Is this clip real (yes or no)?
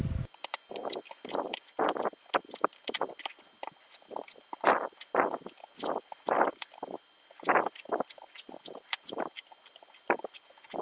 yes